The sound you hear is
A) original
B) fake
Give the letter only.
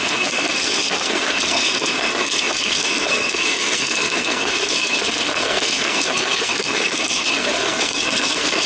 B